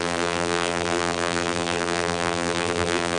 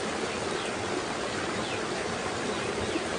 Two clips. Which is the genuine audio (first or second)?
second